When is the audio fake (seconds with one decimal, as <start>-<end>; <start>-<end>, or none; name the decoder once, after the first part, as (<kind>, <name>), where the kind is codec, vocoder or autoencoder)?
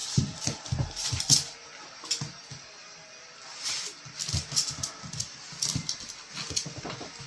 none